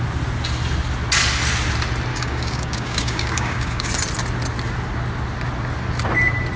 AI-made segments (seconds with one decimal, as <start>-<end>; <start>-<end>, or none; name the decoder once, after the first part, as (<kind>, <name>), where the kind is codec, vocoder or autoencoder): 2.1-3.9 (codec, DAC)